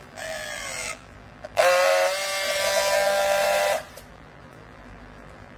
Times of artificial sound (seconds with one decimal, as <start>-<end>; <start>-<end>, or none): 0.0-1.9; 2.6-3.4; 4.1-5.6